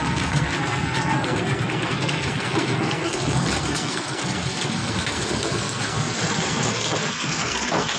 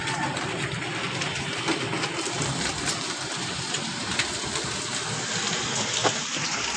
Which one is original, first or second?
second